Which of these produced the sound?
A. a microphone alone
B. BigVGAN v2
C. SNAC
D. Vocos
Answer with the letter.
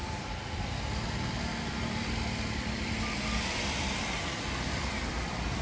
B